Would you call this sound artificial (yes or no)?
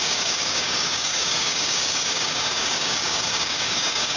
yes